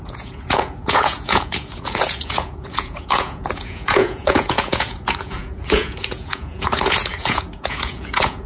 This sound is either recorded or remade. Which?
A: remade